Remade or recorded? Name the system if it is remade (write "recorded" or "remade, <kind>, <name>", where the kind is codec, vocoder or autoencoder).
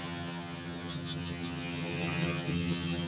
remade, vocoder, HiFi-GAN